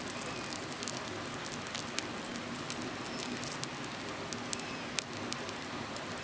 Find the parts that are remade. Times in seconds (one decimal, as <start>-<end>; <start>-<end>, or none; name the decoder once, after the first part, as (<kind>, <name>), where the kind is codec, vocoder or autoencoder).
none